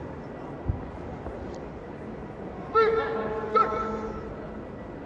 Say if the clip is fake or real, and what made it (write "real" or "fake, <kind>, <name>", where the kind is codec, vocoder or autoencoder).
real